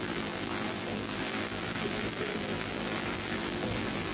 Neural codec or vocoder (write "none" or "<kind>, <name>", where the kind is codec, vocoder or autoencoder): vocoder, BigVGAN v2